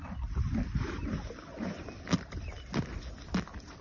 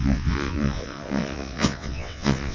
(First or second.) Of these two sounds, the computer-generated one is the second